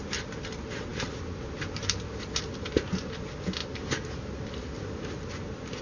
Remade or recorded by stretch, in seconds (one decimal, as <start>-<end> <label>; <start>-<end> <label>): 0.0-5.8 recorded